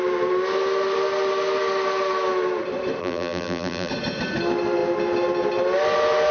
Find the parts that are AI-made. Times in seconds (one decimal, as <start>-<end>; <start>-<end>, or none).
3.0-3.9